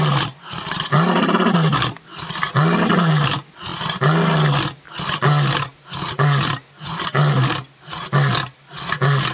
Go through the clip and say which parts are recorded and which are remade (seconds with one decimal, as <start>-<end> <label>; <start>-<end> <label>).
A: 0.0-9.3 recorded

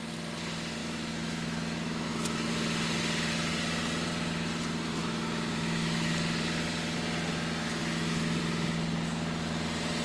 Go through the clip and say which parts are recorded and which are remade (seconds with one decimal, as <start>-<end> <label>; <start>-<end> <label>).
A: 0.0-0.8 recorded; 0.8-2.5 remade; 2.5-5.0 recorded; 5.0-6.1 remade; 6.1-7.8 recorded; 7.8-8.4 remade; 8.4-10.0 recorded

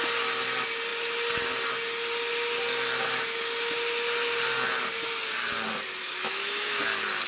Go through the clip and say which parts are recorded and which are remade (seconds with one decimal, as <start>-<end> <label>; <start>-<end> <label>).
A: 0.0-6.0 recorded; 6.0-6.8 remade; 6.8-7.3 recorded

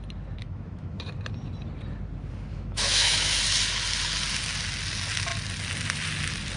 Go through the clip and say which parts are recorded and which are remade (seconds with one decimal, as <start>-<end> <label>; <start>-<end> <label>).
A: 0.0-0.4 recorded; 0.4-1.0 remade; 1.0-2.5 recorded; 2.5-3.4 remade; 3.4-6.6 recorded